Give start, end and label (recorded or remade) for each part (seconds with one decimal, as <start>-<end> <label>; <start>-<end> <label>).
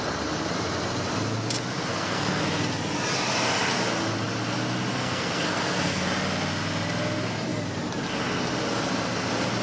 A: 0.0-1.9 recorded; 1.9-2.4 remade; 2.4-4.9 recorded; 4.9-6.1 remade; 6.1-9.6 recorded